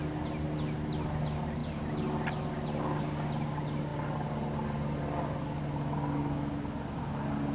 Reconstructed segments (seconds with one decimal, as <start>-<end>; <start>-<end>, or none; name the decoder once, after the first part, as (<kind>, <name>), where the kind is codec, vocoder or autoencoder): none